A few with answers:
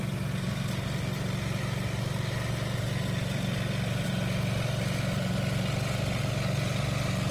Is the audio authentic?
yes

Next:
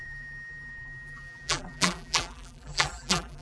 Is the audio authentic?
no